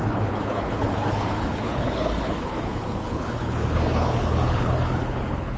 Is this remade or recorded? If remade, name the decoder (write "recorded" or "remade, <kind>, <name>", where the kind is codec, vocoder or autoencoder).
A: remade, codec, HILCodec